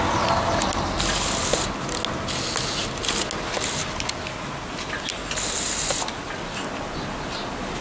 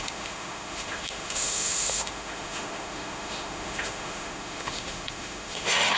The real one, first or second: first